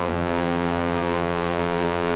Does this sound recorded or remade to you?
remade